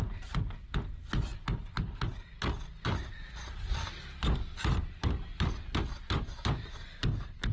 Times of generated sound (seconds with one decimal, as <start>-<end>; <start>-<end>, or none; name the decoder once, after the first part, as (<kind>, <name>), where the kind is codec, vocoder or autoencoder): none

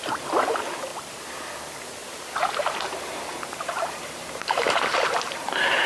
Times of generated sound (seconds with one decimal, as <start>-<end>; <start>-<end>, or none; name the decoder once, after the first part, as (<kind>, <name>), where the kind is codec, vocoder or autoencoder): 0.9-1.5 (vocoder, BigVGAN v2); 2.0-5.5

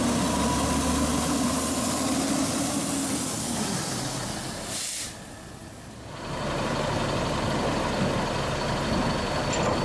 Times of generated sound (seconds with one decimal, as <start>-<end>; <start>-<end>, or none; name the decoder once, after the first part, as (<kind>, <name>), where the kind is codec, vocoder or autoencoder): none